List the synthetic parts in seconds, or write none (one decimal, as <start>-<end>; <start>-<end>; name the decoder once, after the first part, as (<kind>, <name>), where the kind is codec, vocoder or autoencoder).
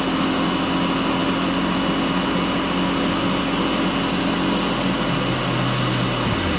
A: none